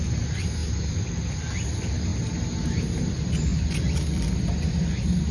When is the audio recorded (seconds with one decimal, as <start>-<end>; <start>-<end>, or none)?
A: 0.0-5.3